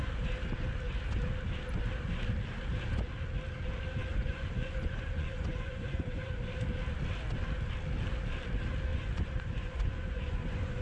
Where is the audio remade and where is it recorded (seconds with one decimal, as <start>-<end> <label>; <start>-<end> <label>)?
0.0-4.1 recorded; 4.1-6.3 remade; 6.3-8.9 recorded; 8.9-10.8 remade